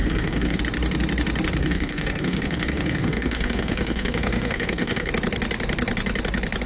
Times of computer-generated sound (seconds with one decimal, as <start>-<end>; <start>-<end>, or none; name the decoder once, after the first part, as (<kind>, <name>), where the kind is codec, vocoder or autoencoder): 0.0-0.6 (codec, SNAC); 1.6-5.1